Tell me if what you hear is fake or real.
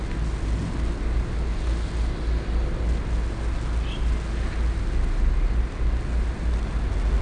real